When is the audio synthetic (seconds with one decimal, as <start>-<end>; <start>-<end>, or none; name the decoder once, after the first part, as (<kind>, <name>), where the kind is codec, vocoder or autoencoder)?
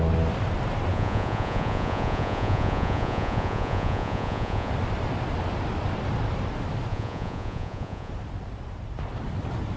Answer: 0.9-4.7 (vocoder, Vocos); 6.9-8.1